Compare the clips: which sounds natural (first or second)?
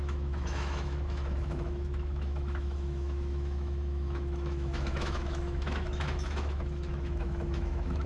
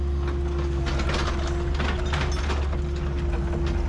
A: second